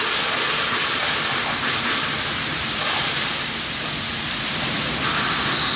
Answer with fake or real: real